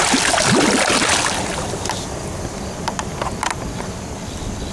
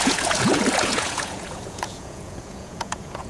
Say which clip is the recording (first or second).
first